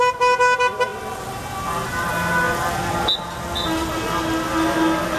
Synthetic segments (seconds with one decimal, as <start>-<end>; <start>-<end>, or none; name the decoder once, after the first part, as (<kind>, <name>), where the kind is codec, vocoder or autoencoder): none